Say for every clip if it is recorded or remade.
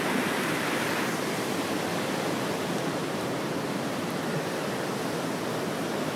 recorded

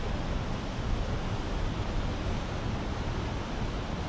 recorded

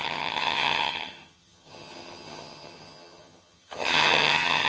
remade